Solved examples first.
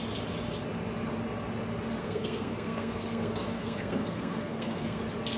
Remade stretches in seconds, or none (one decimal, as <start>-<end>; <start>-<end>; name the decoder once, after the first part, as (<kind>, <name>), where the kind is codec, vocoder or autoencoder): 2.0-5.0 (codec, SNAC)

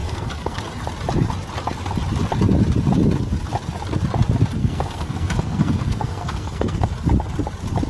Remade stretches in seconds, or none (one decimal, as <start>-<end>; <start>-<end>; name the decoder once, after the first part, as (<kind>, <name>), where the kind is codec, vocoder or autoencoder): 0.0-0.6 (codec, SNAC); 4.6-6.9

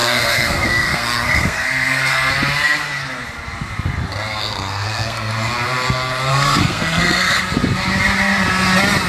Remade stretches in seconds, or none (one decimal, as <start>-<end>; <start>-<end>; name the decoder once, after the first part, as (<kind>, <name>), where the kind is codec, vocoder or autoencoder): 0.0-2.3 (codec, SNAC); 4.4-5.3; 6.3-7.4

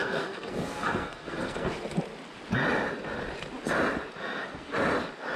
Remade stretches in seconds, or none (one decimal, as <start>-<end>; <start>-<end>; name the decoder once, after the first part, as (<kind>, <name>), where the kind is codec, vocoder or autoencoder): 0.0-1.7 (codec, SNAC); 4.2-4.7

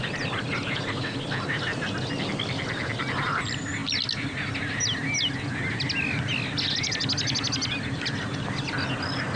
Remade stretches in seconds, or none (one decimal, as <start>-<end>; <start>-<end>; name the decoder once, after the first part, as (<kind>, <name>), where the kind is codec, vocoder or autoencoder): none

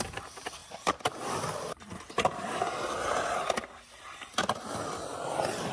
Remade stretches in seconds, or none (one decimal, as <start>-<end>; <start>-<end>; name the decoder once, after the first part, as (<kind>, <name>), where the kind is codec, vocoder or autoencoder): none

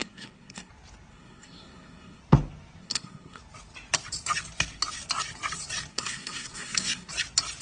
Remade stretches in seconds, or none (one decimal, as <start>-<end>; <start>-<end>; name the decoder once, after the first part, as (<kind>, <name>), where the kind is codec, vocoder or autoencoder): 0.0-0.7 (codec, SNAC); 1.1-2.2; 2.8-3.4; 5.9-7.1

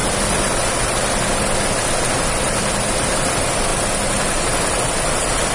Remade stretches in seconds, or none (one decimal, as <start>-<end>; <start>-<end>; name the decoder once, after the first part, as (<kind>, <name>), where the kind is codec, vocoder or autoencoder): none